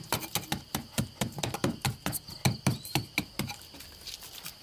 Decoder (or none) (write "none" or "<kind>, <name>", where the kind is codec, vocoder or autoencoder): none